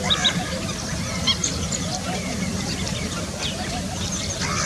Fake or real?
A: fake